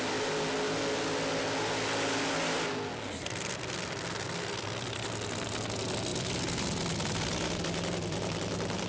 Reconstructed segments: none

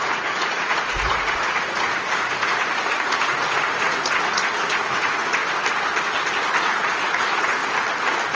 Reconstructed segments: 0.0-5.4 (vocoder, Vocos); 6.5-7.6

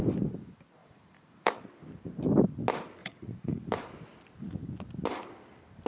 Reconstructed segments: 0.8-1.5 (vocoder, Vocos); 3.0-3.6

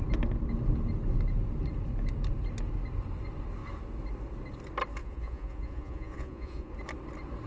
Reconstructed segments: 5.0-6.7 (vocoder, Vocos)

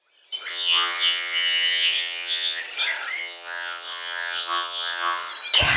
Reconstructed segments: 0.5-2.6 (vocoder, WaveNeXt); 3.2-5.3

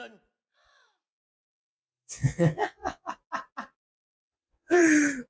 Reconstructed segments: 1.5-3.1 (vocoder, WaveNeXt); 3.9-4.8